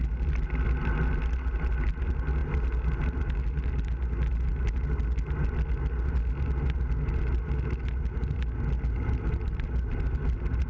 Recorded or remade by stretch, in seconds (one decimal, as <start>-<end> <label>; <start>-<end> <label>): 0.0-10.7 recorded